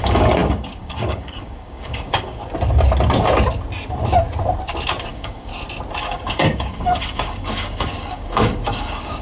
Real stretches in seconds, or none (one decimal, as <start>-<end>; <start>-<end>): 2.4-5.1; 5.5-6.0